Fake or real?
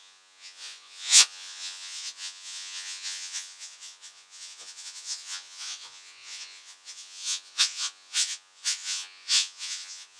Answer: fake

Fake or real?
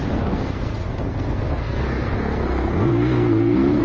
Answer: fake